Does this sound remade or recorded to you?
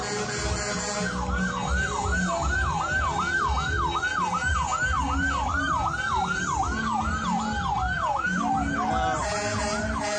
recorded